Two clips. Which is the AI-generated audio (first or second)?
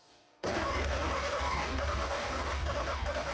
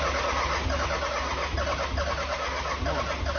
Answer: first